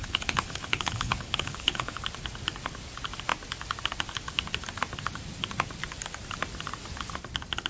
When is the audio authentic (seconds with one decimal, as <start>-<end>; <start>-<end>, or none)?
2.0-7.7